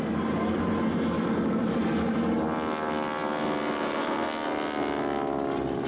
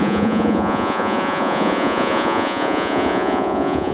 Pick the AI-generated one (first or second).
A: second